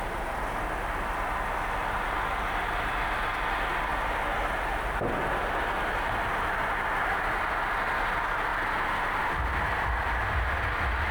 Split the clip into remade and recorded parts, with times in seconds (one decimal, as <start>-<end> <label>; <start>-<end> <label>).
0.0-8.5 recorded; 8.5-9.3 remade; 9.3-11.1 recorded